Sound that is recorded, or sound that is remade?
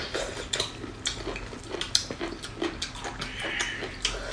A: recorded